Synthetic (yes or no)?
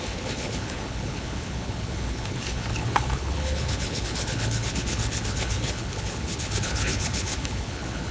yes